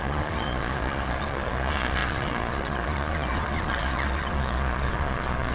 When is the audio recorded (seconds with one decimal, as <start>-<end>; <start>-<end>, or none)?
none